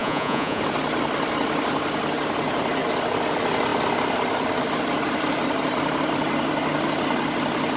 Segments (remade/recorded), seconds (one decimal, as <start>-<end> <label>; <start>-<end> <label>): 0.0-0.6 remade; 0.6-7.8 recorded